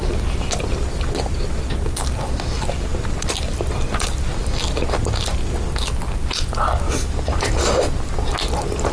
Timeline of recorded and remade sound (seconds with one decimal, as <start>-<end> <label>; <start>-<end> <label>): 0.0-8.9 recorded

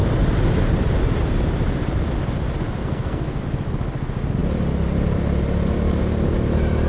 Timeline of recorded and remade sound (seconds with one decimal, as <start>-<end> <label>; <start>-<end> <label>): 0.0-2.8 recorded; 2.8-3.4 remade; 3.4-6.9 recorded

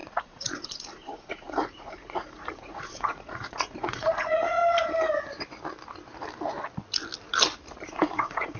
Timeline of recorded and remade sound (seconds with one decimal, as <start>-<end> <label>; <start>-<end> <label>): 0.0-4.6 remade; 4.6-7.9 recorded; 7.9-8.6 remade

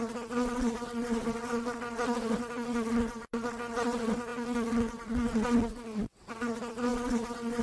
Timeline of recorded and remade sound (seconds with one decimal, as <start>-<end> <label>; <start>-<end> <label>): 0.0-7.6 remade

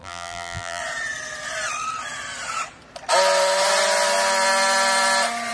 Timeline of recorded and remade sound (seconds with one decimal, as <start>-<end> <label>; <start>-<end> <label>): 0.0-0.8 remade; 0.8-5.5 recorded

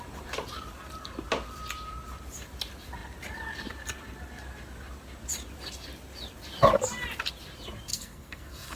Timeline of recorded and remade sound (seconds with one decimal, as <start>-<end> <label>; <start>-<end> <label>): 0.0-7.9 recorded; 7.9-8.8 remade

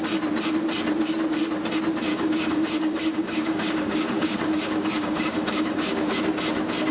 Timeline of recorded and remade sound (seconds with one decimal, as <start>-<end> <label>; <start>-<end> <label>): 0.0-2.1 recorded; 2.1-6.2 remade; 6.2-6.9 recorded

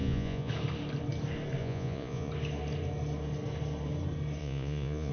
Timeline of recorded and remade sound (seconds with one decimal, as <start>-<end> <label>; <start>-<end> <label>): 0.0-0.5 remade; 0.5-1.6 recorded; 1.6-2.3 remade; 2.3-4.4 recorded; 4.4-5.1 remade